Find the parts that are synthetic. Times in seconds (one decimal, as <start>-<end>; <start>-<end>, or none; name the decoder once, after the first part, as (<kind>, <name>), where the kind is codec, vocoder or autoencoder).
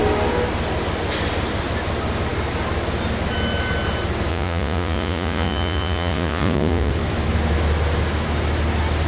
4.3-6.9 (vocoder, Vocos)